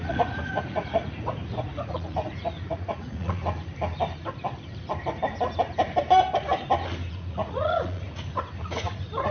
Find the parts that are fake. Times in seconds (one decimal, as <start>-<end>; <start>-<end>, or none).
0.0-3.4; 7.1-9.3